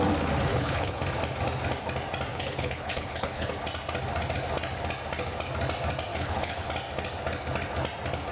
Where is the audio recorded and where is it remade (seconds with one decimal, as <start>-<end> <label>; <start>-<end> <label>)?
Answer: 0.0-0.5 recorded; 0.5-1.0 remade; 1.0-2.3 recorded; 2.3-3.5 remade; 3.5-6.1 recorded; 6.1-6.7 remade; 6.7-8.3 recorded